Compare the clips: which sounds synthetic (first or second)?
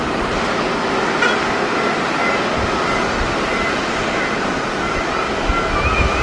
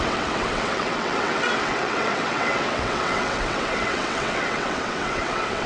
second